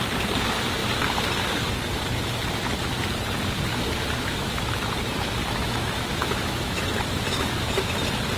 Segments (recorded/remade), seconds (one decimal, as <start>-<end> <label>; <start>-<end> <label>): 0.0-3.7 recorded; 3.7-4.6 remade; 4.6-5.4 recorded; 5.4-7.9 remade; 7.9-8.4 recorded